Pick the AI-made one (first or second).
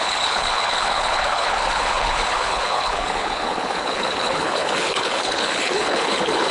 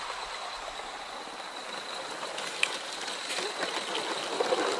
first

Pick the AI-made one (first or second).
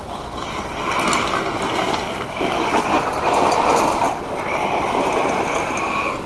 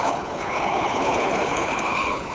second